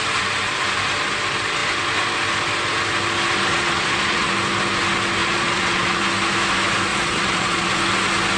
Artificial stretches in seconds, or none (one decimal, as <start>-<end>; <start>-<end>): 3.5-4.3; 5.2-6.0; 6.9-7.8